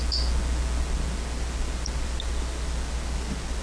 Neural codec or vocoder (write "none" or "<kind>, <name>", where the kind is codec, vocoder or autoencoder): none